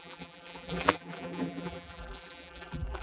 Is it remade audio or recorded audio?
remade